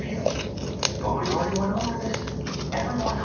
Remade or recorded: recorded